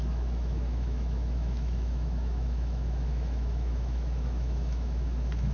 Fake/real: fake